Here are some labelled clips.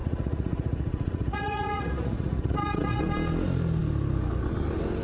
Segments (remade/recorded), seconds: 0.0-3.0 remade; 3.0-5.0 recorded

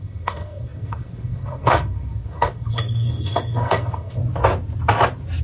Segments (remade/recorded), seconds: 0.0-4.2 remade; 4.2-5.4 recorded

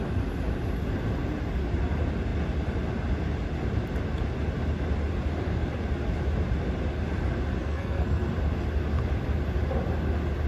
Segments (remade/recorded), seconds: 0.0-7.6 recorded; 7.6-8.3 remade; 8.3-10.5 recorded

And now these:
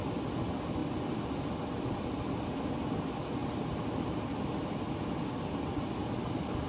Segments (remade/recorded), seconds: 0.0-6.7 recorded